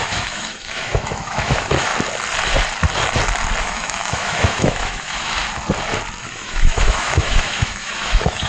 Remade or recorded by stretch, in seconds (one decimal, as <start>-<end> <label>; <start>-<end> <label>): 0.0-1.9 remade; 1.9-3.6 recorded; 3.6-5.4 remade; 5.4-6.2 recorded; 6.2-8.5 remade

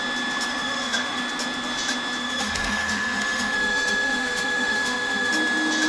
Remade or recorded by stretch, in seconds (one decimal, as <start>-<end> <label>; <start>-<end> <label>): 0.0-0.5 recorded; 0.5-1.2 remade; 1.2-2.2 recorded; 2.2-5.3 remade; 5.3-5.9 recorded

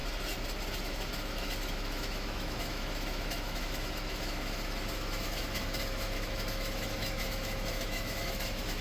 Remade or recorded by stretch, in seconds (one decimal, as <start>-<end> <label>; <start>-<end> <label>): 0.0-0.9 recorded; 0.9-8.8 remade

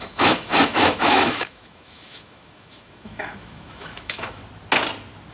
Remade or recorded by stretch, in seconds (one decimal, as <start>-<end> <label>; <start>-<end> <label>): 0.0-4.4 remade; 4.4-5.3 recorded